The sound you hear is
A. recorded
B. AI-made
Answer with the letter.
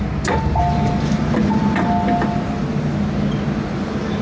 A